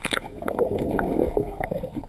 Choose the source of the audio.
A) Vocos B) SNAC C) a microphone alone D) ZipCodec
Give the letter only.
B